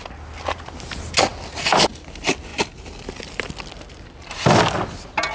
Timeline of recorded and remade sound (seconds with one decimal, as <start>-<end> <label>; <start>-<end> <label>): 0.0-5.3 recorded